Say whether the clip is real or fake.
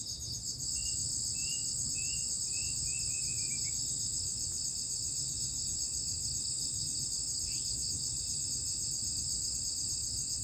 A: real